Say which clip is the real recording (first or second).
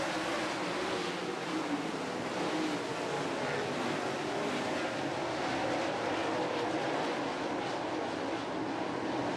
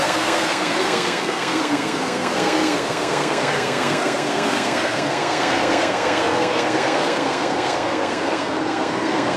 first